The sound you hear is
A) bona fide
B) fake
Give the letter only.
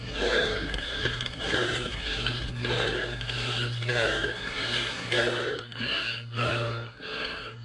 B